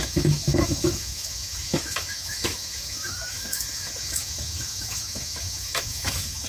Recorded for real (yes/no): no